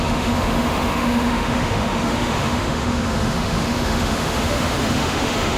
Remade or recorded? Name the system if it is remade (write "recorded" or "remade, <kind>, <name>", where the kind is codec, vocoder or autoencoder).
remade, autoencoder, DAC-VAE